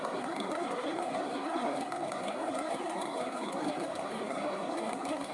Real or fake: fake